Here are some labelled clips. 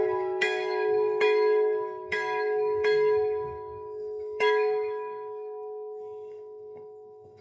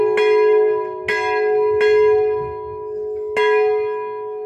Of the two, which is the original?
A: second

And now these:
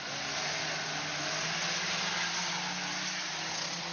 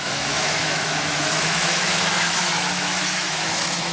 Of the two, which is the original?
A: first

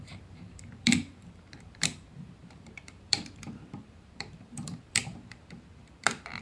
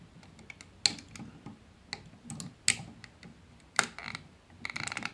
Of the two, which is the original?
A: second